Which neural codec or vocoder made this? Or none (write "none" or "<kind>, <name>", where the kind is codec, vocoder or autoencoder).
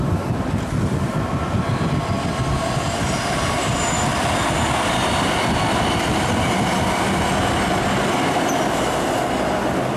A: none